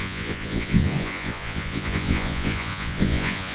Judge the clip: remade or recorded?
remade